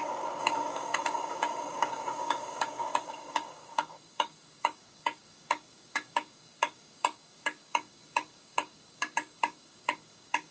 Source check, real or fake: fake